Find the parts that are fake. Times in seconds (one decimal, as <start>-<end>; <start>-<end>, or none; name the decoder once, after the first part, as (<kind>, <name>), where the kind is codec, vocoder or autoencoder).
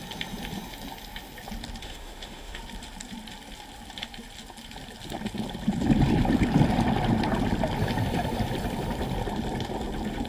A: 1.8-2.6 (autoencoder, DAC-VAE)